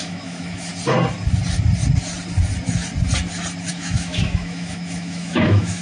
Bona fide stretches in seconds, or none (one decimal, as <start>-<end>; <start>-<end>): 0.7-3.7